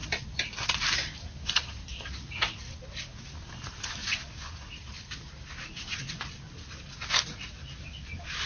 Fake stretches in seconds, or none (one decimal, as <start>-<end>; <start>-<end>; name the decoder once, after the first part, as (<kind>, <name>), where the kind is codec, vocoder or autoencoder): none